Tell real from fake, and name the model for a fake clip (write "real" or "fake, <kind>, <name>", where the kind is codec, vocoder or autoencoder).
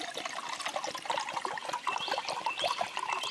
real